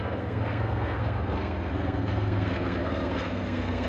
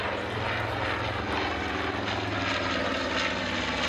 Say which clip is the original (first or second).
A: second